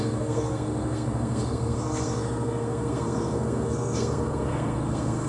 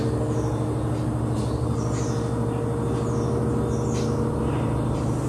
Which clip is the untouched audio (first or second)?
second